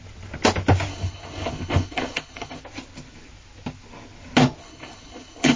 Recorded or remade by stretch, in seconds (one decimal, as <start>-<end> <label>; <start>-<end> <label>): 0.0-0.9 recorded; 0.9-2.6 remade; 2.6-4.6 recorded; 4.6-5.6 remade

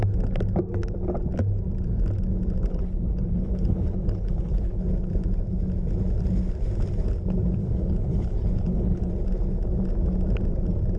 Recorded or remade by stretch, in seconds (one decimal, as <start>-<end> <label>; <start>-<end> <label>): 0.0-2.7 recorded; 2.7-4.8 remade; 4.8-7.6 recorded; 7.6-9.1 remade; 9.1-11.0 recorded

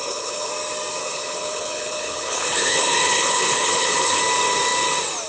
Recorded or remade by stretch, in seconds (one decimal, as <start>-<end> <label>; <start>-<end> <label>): 0.0-0.5 remade; 0.5-1.0 recorded; 1.0-4.2 remade; 4.2-5.3 recorded